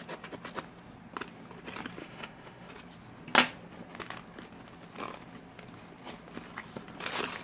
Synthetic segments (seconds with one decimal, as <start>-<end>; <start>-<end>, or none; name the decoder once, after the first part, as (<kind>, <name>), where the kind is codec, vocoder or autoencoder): 2.0-2.7 (autoencoder, DAC-VAE)

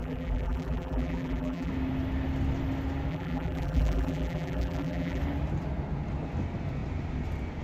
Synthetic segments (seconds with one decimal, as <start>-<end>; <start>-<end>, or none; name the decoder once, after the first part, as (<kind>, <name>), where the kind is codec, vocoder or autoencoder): 0.0-1.7 (vocoder, BigVGAN v2); 3.1-5.2

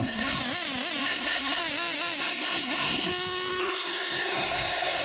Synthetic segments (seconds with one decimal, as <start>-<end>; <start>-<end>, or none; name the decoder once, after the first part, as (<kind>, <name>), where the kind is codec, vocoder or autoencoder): 0.0-0.4 (codec, SNAC); 1.0-1.6; 2.2-3.1; 3.6-5.0

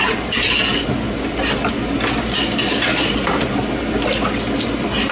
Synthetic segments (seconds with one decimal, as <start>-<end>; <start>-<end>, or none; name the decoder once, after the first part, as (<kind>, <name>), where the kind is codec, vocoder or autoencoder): none